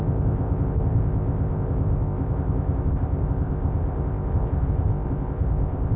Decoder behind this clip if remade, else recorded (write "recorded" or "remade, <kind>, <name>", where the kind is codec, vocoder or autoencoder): remade, codec, ZipCodec